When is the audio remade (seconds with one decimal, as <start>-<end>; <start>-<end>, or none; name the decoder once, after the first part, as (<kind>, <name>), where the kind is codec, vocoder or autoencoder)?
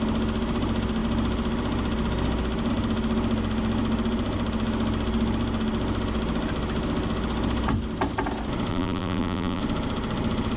8.7-9.6 (vocoder, BigVGAN v2)